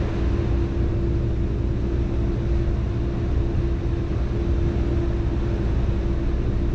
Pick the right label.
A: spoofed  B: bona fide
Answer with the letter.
B